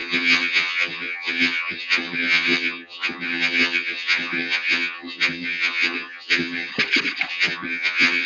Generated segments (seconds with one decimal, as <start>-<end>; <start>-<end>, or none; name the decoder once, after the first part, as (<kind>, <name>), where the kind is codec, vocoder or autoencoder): 0.0-6.7 (vocoder, HiFi-GAN); 7.3-8.3